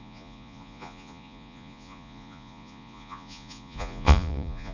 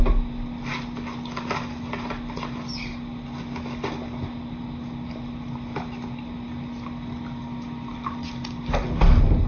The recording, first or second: second